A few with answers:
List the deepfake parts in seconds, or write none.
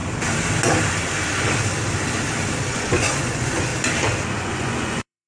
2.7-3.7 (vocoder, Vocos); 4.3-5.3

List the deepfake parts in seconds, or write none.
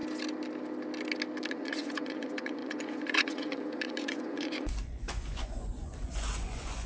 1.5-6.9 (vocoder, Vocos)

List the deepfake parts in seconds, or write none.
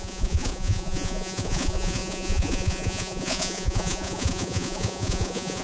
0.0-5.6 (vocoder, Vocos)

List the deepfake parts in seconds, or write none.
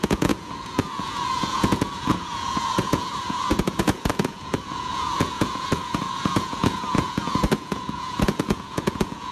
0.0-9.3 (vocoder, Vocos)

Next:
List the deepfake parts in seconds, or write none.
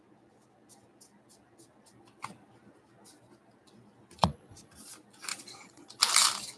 4.2-4.7 (vocoder, Vocos); 5.3-6.0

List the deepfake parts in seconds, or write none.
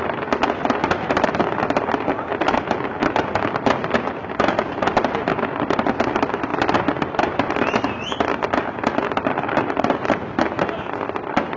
none